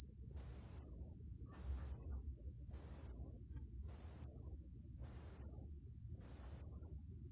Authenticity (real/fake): real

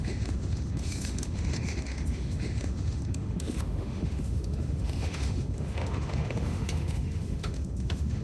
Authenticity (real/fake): fake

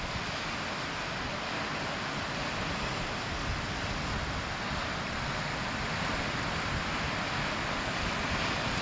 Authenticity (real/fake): real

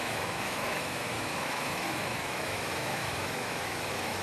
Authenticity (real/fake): fake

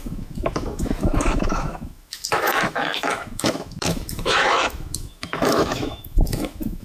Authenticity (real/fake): fake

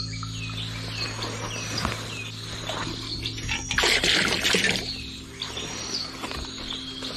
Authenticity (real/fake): real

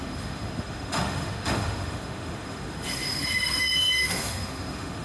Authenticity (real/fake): fake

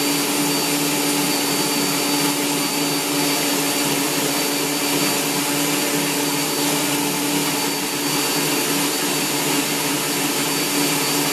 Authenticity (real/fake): real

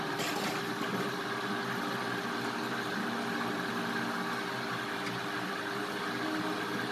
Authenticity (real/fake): real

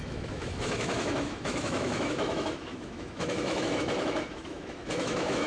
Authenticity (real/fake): fake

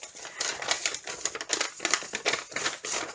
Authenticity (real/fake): real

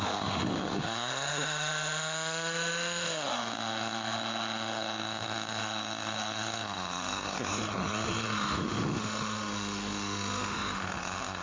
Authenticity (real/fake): fake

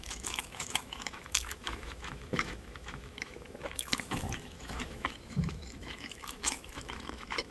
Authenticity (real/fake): fake